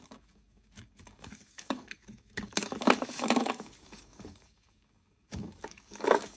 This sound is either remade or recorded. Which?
remade